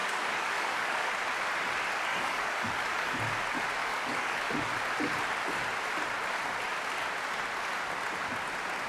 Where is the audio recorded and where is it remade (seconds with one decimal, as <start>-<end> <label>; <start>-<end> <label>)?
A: 0.0-1.1 remade; 1.1-2.1 recorded; 2.1-3.2 remade; 3.2-3.8 recorded; 3.8-4.4 remade; 4.4-8.9 recorded